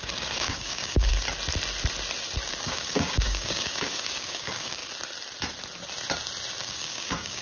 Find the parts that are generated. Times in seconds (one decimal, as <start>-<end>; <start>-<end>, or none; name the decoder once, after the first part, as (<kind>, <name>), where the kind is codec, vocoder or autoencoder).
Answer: 0.0-1.1 (codec, DAC); 2.5-4.8; 6.6-7.4